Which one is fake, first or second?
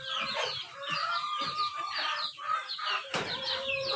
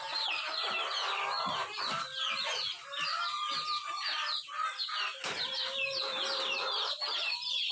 first